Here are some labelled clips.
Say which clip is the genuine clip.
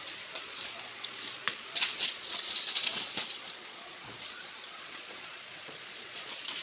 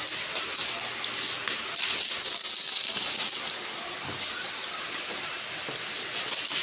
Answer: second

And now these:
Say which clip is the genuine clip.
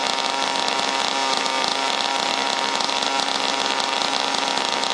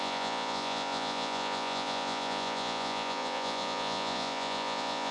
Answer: first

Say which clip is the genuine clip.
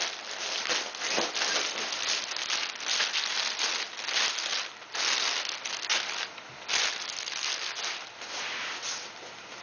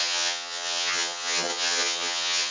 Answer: first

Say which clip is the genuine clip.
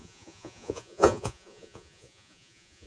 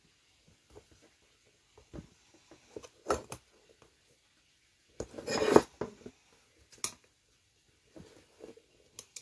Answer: second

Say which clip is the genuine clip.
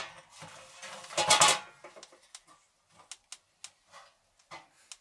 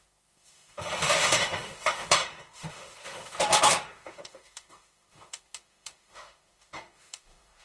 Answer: first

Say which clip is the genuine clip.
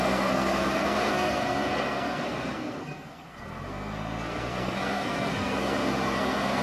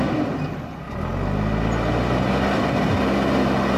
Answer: second